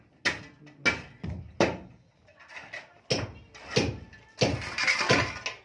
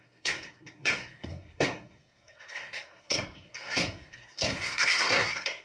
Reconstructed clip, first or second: second